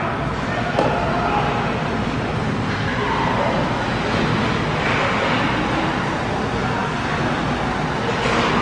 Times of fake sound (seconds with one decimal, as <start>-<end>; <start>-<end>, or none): none